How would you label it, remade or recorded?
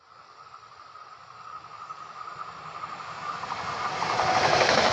recorded